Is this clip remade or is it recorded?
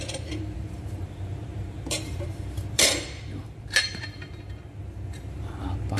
remade